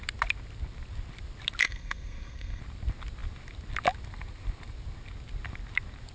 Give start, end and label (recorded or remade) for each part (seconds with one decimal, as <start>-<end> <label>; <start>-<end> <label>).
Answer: 0.0-1.6 recorded; 1.6-2.6 remade; 2.6-6.1 recorded